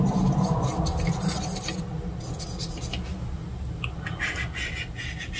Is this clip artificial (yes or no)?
no